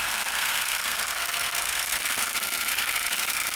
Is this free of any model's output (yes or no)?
no